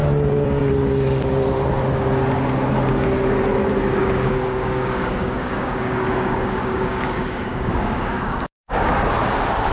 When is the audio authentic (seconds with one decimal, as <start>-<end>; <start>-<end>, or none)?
0.7-4.0; 8.9-9.7